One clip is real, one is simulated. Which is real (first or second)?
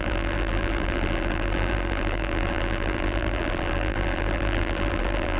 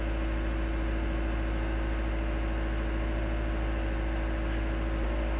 second